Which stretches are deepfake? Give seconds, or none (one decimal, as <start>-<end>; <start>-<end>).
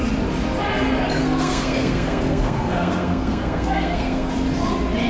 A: 1.2-4.3